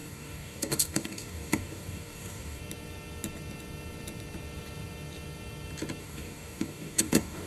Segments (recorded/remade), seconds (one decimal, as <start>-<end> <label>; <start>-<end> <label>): 0.0-2.6 remade; 2.6-6.0 recorded; 6.0-7.5 remade